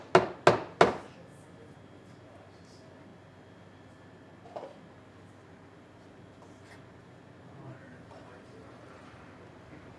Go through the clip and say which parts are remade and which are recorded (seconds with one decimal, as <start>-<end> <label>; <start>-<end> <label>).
0.0-7.8 recorded; 7.8-9.3 remade; 9.3-10.0 recorded

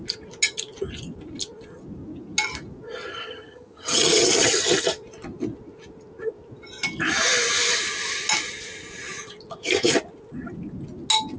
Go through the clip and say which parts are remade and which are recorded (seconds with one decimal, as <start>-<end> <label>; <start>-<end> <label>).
0.0-3.1 recorded; 3.1-4.3 remade; 4.3-11.4 recorded

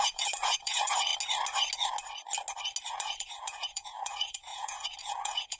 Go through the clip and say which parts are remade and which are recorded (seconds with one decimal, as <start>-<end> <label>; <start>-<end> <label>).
0.0-1.1 remade; 1.1-2.9 recorded; 2.9-5.6 remade

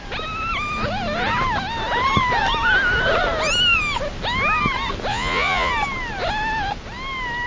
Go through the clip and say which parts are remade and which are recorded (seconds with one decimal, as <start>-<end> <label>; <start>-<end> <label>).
0.0-5.1 recorded; 5.1-5.7 remade; 5.7-7.5 recorded

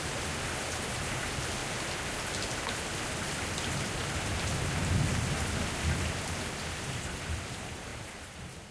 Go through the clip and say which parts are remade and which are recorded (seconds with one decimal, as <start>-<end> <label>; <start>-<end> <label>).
0.0-1.6 remade; 1.6-3.6 recorded; 3.6-4.0 remade; 4.0-6.5 recorded; 6.5-8.7 remade